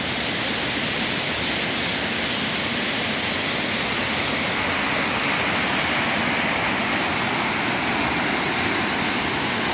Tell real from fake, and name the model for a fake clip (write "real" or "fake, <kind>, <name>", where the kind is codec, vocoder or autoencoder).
real